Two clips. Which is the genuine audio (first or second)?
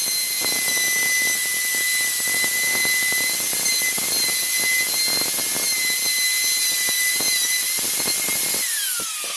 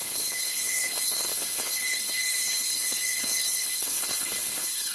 first